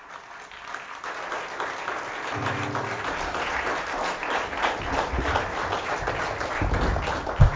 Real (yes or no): yes